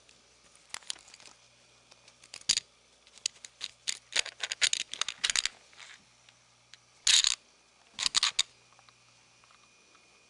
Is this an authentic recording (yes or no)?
yes